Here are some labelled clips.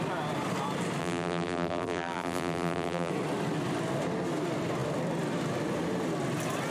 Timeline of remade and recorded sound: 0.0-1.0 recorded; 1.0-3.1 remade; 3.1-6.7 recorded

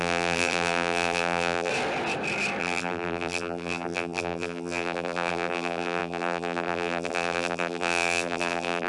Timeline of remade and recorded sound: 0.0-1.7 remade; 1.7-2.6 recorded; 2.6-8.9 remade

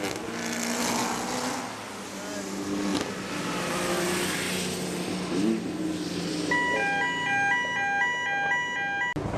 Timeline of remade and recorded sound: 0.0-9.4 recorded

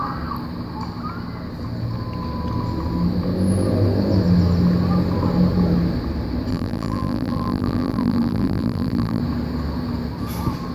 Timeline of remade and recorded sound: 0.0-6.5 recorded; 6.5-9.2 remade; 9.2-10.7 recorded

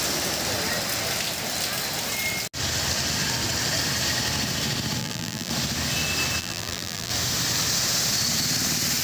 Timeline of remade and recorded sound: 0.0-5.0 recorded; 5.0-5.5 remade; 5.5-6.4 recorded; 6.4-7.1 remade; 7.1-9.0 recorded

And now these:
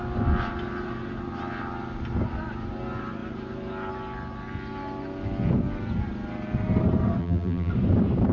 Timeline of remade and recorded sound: 0.0-7.2 recorded; 7.2-7.7 remade; 7.7-8.3 recorded

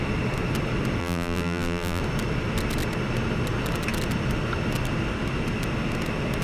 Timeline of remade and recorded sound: 0.0-1.0 recorded; 1.0-2.0 remade; 2.0-6.4 recorded